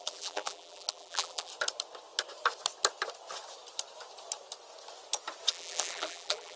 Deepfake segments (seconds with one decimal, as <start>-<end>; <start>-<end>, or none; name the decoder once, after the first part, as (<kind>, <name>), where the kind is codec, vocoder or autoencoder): 0.0-1.5 (vocoder, BigVGAN v2); 5.5-6.6